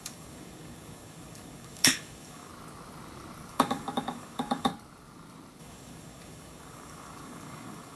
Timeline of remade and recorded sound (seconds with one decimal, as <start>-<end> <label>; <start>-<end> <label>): 0.0-2.5 remade; 2.5-3.5 recorded; 3.5-4.7 remade; 4.7-5.6 recorded; 5.6-8.0 remade